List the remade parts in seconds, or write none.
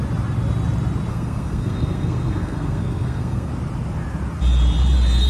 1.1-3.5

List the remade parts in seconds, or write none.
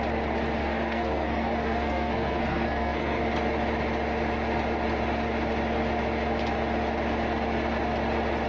0.6-3.2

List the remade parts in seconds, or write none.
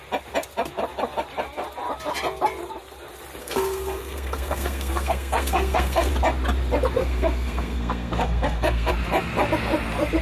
3.4-6.1; 7.0-8.9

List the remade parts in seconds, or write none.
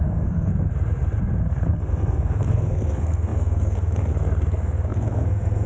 0.0-0.5; 1.4-5.7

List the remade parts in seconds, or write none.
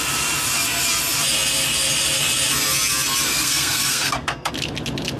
3.3-4.5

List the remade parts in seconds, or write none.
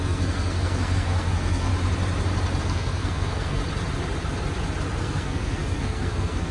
0.0-1.7; 2.6-3.6; 5.0-6.5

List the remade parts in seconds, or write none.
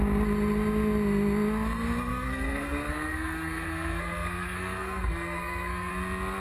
2.1-5.9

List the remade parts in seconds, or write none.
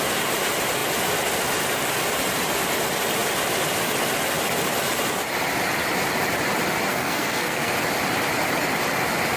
6.9-7.7